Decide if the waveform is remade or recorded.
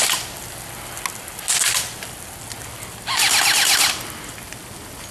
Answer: recorded